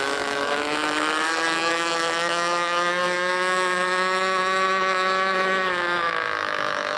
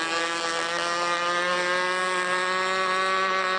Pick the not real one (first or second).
first